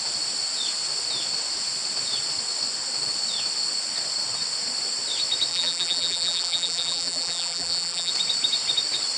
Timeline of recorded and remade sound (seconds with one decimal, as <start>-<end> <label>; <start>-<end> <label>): 0.0-5.5 recorded; 5.5-8.1 remade; 8.1-9.2 recorded